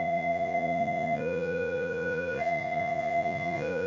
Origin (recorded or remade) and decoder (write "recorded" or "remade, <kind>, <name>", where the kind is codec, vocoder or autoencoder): remade, vocoder, Vocos